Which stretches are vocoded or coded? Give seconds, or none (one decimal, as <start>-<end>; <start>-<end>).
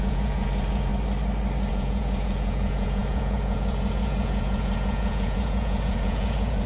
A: 0.0-0.9; 1.7-6.7